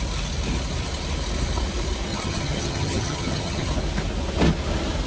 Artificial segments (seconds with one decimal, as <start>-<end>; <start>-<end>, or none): 2.1-3.7